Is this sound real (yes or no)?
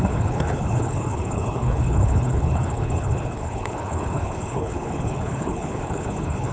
no